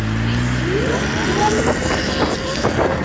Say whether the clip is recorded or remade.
recorded